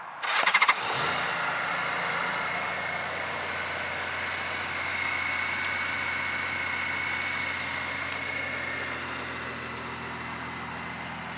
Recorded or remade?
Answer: recorded